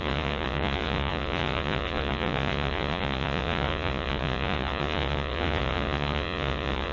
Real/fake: fake